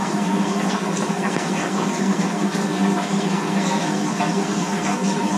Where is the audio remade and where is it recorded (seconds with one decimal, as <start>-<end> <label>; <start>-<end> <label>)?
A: 0.0-5.4 remade